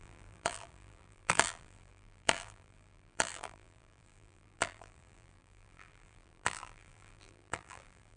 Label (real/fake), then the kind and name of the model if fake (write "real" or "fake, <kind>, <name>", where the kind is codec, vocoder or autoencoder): fake, vocoder, BigVGAN v2